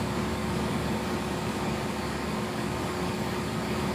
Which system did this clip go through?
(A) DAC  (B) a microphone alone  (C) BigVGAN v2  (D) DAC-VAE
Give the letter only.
A